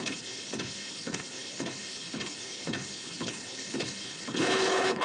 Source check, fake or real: fake